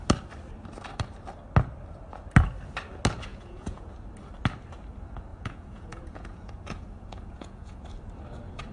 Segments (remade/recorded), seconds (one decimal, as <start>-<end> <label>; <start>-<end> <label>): 0.0-3.3 recorded; 3.3-3.9 remade; 3.9-5.3 recorded; 5.3-7.8 remade; 7.8-8.7 recorded